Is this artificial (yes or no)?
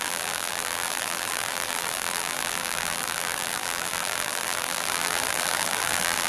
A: yes